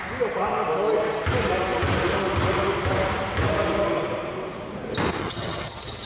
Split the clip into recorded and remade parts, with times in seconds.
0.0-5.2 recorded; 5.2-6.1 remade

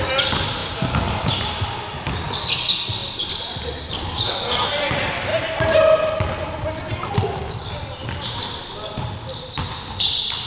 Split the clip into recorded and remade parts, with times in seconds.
0.0-0.6 recorded; 0.6-1.3 remade; 1.3-3.0 recorded; 3.0-4.7 remade; 4.7-10.5 recorded

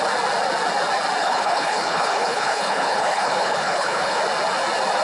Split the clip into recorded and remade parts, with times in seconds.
0.0-1.2 recorded; 1.2-4.2 remade; 4.2-5.0 recorded

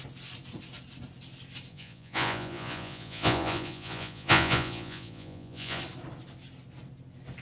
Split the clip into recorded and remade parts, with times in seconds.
0.0-1.7 recorded; 1.7-5.8 remade; 5.8-7.4 recorded